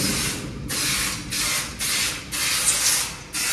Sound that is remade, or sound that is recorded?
recorded